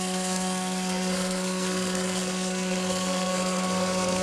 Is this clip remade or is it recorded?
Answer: remade